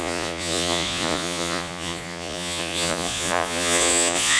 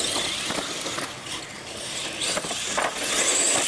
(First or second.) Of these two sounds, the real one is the second